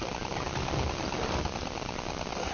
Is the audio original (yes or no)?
yes